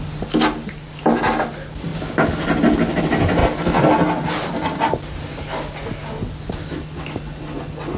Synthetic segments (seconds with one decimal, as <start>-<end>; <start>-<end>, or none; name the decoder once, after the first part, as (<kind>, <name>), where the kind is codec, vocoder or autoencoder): none